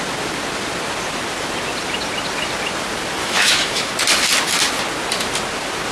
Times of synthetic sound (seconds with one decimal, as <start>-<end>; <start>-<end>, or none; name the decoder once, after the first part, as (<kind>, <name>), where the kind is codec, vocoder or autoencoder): 3.2-3.9 (autoencoder, DAC-VAE)